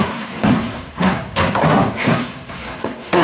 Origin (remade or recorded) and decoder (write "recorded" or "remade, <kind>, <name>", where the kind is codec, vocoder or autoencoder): remade, codec, SNAC